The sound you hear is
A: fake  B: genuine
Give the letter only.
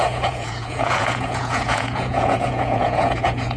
A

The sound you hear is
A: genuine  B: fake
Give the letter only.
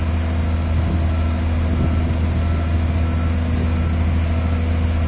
A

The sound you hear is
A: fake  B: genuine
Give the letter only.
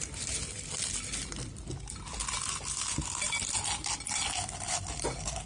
B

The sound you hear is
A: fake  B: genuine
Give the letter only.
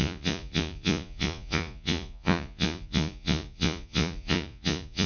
A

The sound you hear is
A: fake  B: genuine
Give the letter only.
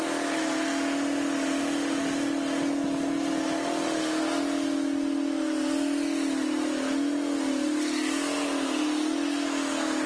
B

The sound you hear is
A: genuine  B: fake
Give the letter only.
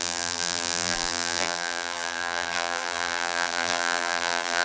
B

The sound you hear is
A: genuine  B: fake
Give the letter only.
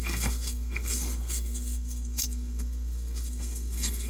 B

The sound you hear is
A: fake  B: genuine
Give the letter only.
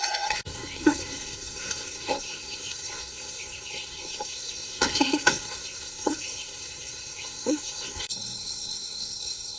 A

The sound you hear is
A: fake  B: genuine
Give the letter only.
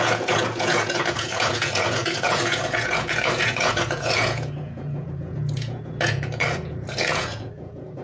A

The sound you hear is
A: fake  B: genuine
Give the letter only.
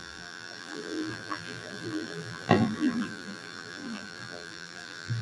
A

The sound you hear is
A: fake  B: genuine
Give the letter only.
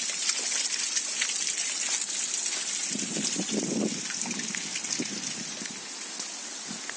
B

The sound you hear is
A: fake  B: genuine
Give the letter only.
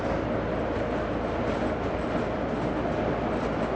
B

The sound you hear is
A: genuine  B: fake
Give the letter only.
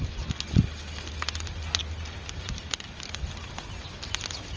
A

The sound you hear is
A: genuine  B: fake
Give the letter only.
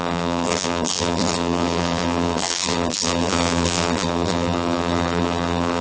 B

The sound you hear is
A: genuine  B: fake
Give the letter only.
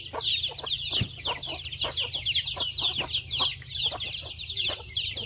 A